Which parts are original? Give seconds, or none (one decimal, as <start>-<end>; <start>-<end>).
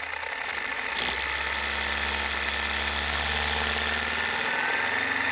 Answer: 0.0-0.5; 3.7-5.3